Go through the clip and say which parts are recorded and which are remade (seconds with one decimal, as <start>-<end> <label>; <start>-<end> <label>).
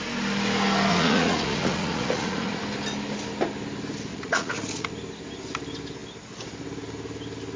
0.0-0.9 recorded; 0.9-2.6 remade; 2.6-4.1 recorded; 4.1-4.9 remade; 4.9-7.6 recorded